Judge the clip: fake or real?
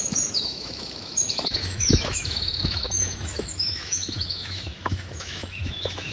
fake